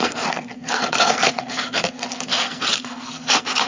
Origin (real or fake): fake